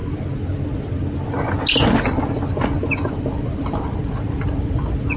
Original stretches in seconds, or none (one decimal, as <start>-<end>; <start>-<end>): 0.0-3.1